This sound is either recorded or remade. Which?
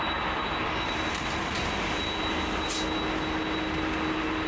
recorded